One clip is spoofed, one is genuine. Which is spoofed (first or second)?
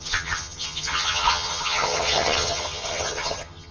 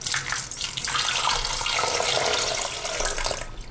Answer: first